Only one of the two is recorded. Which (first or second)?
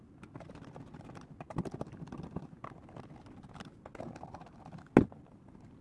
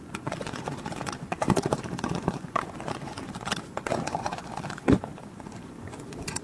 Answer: first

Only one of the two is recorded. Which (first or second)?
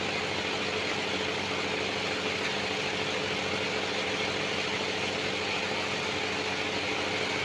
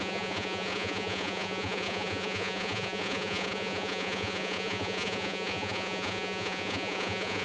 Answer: first